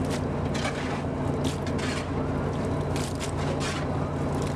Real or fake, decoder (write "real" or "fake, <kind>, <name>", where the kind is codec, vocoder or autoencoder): real